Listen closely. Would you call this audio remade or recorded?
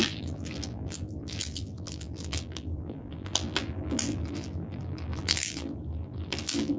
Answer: remade